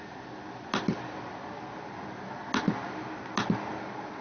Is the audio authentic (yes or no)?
yes